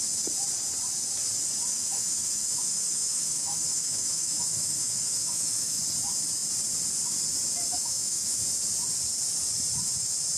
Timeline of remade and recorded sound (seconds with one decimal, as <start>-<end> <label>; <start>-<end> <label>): 0.0-1.7 recorded; 1.7-5.8 remade; 5.8-7.7 recorded; 7.7-8.4 remade; 8.4-10.4 recorded